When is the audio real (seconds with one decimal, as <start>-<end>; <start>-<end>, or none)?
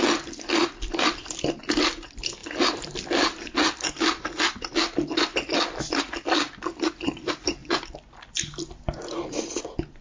0.0-10.0